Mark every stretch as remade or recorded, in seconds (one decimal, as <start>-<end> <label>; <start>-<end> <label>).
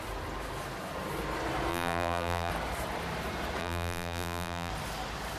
0.0-1.7 recorded; 1.7-2.5 remade; 2.5-3.6 recorded; 3.6-4.7 remade; 4.7-5.4 recorded